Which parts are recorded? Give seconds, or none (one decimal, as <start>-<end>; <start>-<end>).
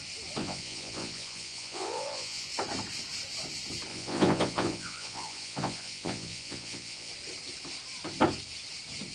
0.0-0.4; 2.5-3.9; 7.1-9.1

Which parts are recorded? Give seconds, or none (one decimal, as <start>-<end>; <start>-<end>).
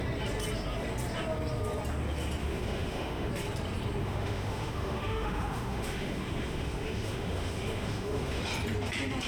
0.0-2.4; 3.3-4.0; 8.4-9.3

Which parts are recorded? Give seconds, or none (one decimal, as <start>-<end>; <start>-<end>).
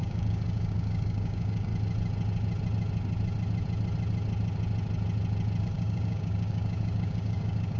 1.7-5.6